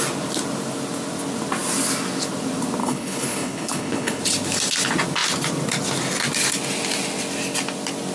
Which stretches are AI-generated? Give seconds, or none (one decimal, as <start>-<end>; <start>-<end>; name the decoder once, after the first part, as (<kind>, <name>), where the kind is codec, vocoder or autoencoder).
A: 2.8-4.2 (codec, HILCodec)